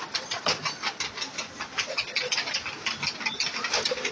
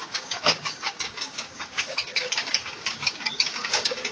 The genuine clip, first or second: first